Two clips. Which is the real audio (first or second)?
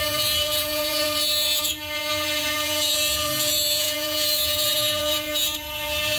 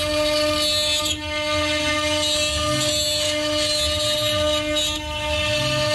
second